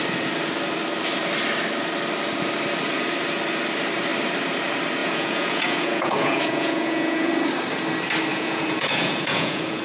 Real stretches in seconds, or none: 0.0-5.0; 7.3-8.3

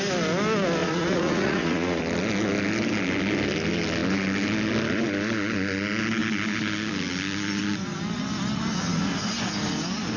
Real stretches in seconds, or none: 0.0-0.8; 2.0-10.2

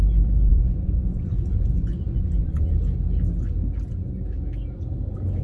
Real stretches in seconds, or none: 0.0-0.5; 2.7-5.4

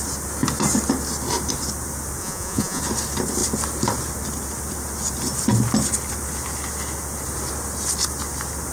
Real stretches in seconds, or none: 0.0-2.2; 2.8-8.7